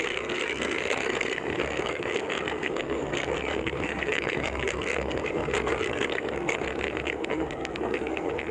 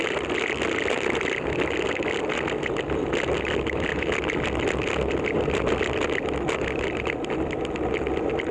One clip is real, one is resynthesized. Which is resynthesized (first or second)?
first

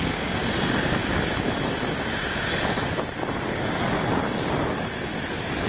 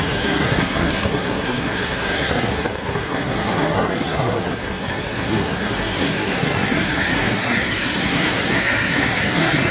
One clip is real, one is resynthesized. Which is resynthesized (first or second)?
second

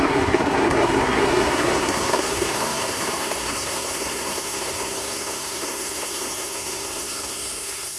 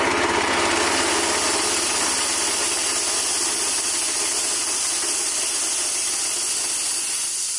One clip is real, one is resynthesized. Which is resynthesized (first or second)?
first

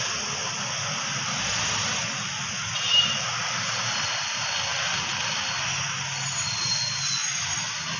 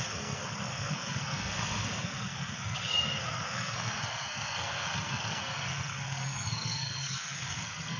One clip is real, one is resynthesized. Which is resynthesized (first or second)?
second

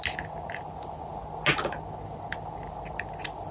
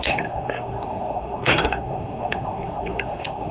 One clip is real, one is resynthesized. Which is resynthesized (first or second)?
second